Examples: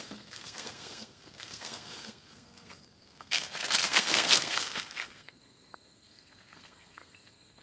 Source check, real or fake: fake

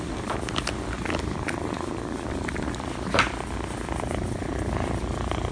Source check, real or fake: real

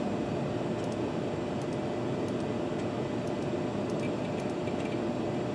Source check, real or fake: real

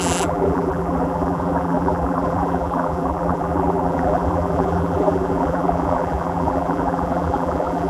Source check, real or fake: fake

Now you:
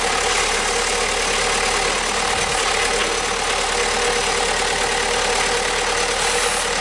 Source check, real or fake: real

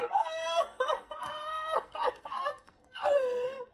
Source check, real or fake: fake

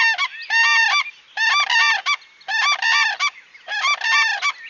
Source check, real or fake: real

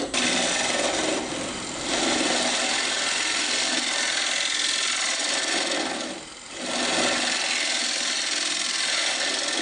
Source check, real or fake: real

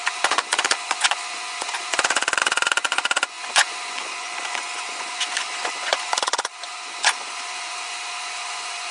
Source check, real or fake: fake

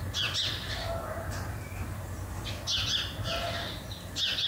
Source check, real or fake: real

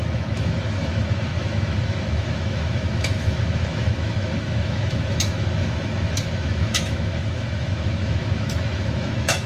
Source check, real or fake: fake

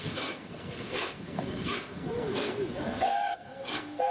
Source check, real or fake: fake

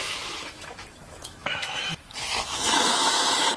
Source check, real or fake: fake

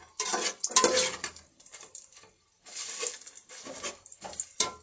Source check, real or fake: real